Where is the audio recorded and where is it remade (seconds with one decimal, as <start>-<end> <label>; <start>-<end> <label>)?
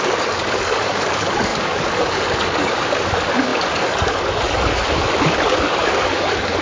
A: 0.0-6.6 remade